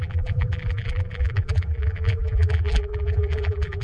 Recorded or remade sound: remade